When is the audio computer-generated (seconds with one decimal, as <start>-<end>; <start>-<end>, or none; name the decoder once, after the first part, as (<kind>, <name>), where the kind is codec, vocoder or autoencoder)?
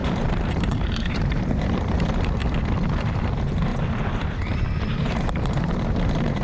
0.0-2.4 (vocoder, BigVGAN v2); 3.2-6.4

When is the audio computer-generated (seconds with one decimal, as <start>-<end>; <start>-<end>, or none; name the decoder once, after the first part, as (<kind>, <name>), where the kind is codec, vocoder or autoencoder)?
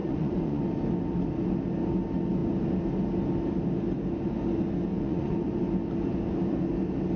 0.0-0.6 (vocoder, Vocos); 4.9-5.6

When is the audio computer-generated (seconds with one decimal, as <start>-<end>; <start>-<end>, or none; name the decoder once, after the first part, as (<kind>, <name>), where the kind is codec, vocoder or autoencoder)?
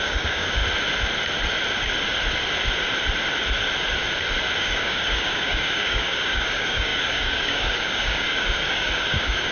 0.0-0.6 (codec, DAC); 4.6-9.5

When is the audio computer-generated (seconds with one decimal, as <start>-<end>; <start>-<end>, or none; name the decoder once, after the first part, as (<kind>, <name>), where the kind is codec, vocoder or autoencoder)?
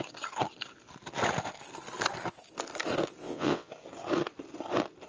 3.2-3.7 (vocoder, WaveNeXt)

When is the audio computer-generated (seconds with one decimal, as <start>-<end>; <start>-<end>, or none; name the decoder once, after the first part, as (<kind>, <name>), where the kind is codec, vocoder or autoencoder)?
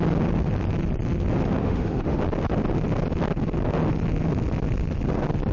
1.6-2.2 (autoencoder, DAC-VAE)